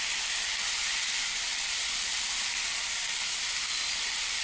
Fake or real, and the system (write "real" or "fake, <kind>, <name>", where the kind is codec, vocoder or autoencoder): real